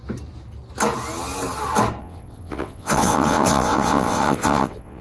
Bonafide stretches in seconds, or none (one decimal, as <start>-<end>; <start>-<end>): 0.0-2.0